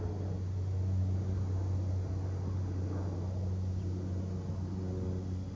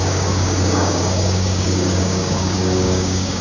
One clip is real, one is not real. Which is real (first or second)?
first